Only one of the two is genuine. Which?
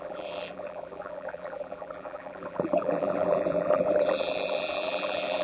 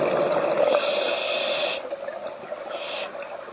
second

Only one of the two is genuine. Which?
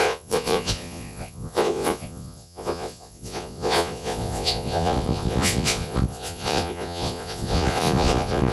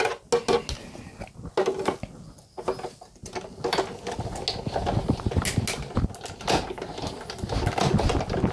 second